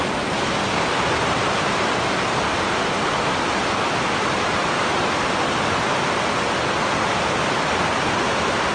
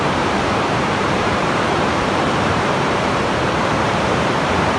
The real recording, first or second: first